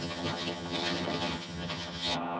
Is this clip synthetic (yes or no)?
yes